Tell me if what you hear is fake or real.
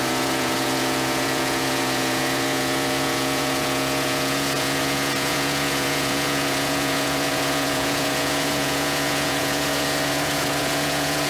fake